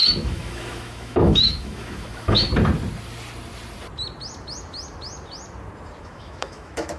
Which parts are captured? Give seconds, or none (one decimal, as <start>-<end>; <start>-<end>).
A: 2.5-6.0